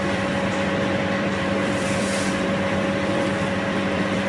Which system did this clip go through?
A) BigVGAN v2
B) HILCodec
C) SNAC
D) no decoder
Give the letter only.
A